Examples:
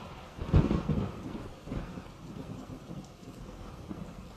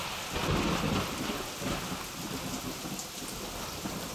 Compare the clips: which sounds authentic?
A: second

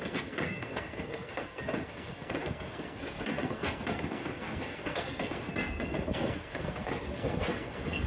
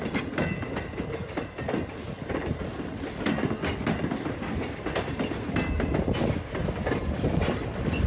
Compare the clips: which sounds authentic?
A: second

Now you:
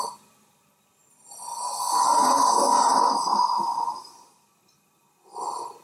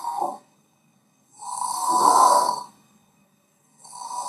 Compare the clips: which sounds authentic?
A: first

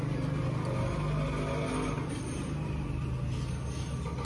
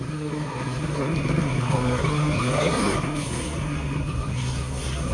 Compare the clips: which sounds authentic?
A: first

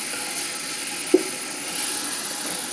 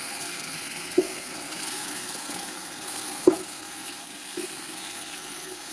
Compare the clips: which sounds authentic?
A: first